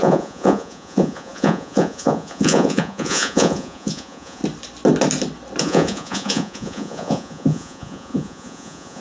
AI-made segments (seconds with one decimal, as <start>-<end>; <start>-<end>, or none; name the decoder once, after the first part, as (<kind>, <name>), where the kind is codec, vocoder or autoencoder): 0.0-4.4 (vocoder, Vocos); 5.6-9.0